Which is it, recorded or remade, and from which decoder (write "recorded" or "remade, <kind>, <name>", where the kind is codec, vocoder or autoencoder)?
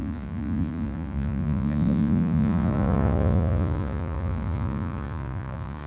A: remade, vocoder, Vocos